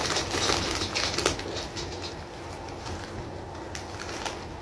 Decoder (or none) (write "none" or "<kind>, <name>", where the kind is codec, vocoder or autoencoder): none